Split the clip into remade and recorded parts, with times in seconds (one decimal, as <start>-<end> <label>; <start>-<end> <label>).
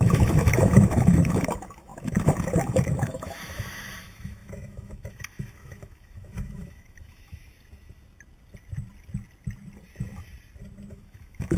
0.0-7.4 remade; 7.4-10.9 recorded; 10.9-11.6 remade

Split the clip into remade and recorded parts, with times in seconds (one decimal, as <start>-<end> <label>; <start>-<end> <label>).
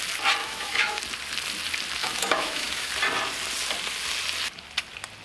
0.0-0.4 recorded; 0.4-1.0 remade; 1.0-2.0 recorded; 2.0-2.9 remade; 2.9-5.2 recorded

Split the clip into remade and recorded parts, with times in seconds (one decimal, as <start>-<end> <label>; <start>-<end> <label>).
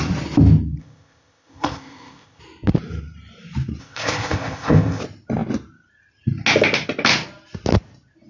0.0-0.8 recorded; 0.8-2.4 remade; 2.4-3.8 recorded; 3.8-5.0 remade; 5.0-8.3 recorded